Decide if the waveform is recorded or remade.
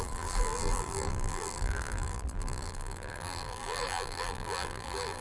remade